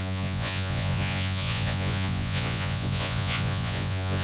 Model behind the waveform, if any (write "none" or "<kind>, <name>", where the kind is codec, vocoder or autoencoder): vocoder, Vocos